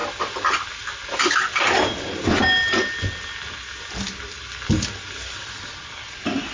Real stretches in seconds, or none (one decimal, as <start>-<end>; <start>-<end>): 0.0-6.5

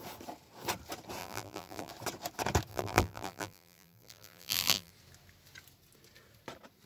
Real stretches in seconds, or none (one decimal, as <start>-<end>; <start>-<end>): 0.0-1.2; 1.9-2.7; 4.9-6.9